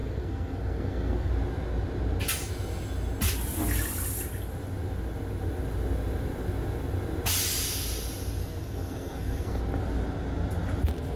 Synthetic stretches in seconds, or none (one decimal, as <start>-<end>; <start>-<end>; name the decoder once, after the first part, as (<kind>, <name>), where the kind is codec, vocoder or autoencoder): 0.0-1.3 (codec, SNAC); 8.4-9.6